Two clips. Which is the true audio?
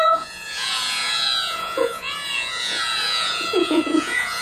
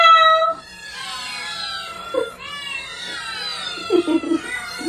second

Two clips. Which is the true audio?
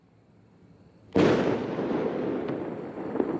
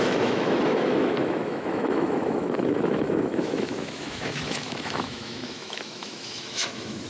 first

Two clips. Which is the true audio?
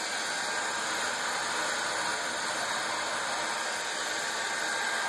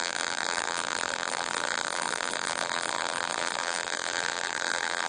first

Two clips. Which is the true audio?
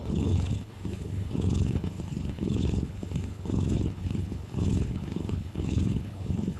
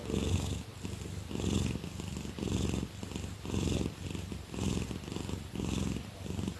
second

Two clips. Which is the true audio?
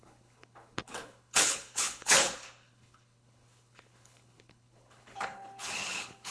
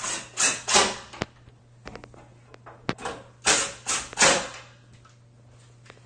second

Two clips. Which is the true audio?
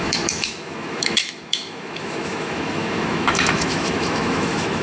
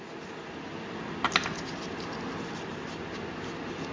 second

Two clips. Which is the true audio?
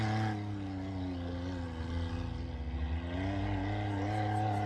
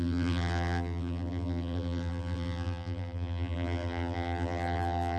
first